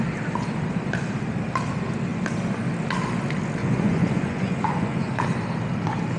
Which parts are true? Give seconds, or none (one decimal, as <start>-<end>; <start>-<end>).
0.0-3.6; 5.2-6.2